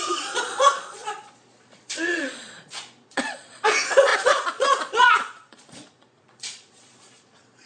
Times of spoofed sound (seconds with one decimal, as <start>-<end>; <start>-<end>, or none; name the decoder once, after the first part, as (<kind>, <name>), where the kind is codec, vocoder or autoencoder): 0.0-7.7 (vocoder, Vocos)